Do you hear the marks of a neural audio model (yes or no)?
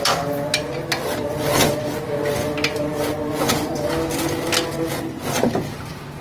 no